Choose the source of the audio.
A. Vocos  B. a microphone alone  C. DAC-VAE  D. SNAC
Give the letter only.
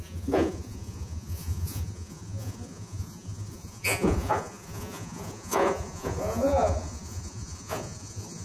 A